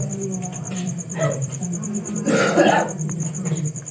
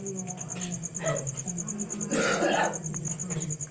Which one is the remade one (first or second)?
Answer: first